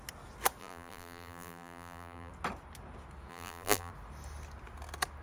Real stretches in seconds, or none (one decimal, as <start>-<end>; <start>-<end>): 0.0-0.6; 2.3-3.3; 3.9-5.2